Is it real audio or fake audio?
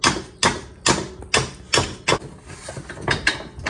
real